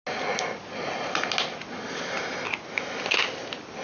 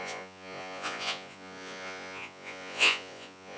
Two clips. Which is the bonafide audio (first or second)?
first